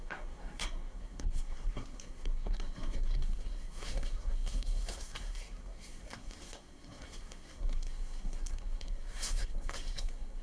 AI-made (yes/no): yes